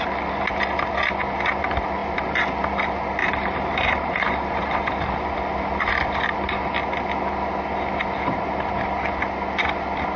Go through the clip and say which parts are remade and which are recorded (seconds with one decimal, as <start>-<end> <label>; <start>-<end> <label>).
0.0-3.2 recorded; 3.2-5.1 remade; 5.1-10.2 recorded